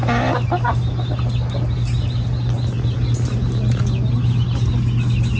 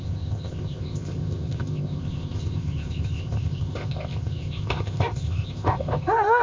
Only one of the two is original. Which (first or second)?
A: first